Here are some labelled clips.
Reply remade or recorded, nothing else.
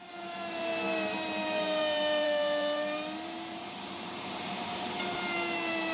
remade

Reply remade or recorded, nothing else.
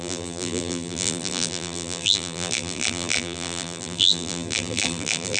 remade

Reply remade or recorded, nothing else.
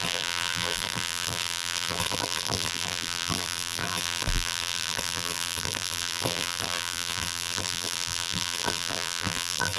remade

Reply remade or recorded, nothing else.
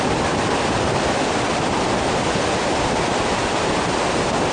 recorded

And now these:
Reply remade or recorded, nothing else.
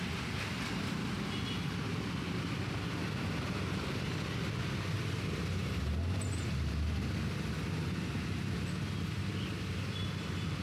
recorded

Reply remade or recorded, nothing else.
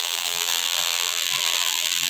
remade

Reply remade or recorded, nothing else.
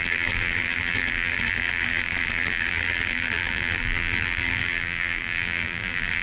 remade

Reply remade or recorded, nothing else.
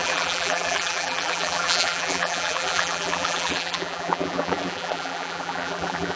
remade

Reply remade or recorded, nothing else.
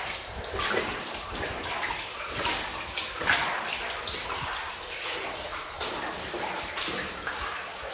recorded